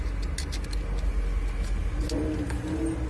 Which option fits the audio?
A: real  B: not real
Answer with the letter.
A